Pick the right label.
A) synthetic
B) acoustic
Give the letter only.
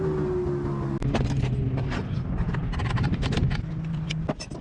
B